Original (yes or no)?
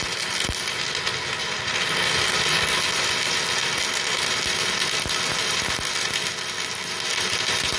yes